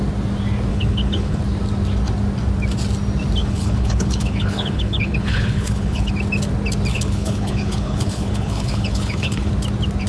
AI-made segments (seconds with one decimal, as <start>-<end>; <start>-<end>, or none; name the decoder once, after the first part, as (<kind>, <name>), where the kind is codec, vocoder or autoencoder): 0.7-1.4 (codec, HILCodec); 3.4-6.1; 6.9-9.5